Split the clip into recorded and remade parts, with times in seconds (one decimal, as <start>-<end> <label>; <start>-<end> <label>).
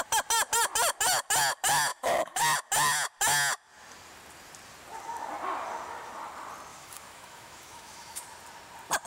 0.0-1.9 recorded; 1.9-2.4 remade; 2.4-6.7 recorded; 6.7-8.2 remade; 8.2-9.1 recorded